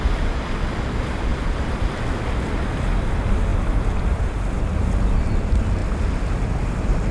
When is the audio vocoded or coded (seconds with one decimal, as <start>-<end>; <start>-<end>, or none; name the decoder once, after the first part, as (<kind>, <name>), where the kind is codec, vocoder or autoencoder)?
none